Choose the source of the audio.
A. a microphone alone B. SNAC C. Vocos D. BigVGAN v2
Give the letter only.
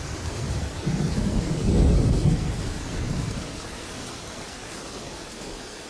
B